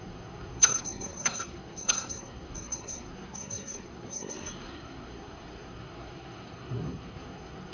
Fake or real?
fake